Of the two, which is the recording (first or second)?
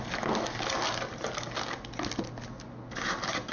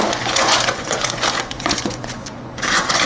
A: first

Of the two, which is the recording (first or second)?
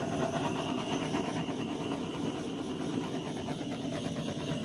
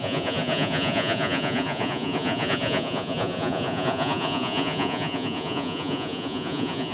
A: first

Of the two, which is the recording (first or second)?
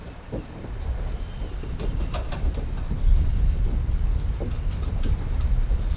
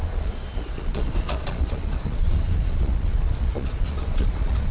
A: first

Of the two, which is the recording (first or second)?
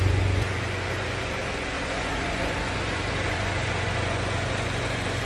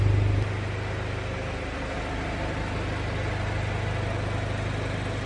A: second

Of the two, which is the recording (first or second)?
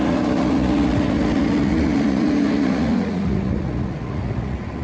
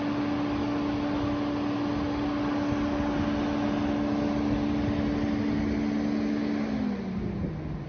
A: second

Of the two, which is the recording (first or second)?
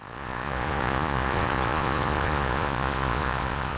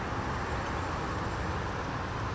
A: second